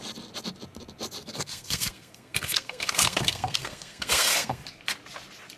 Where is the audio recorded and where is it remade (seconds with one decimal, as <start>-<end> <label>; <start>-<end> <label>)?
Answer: 0.0-1.2 recorded; 1.2-4.6 remade; 4.6-5.6 recorded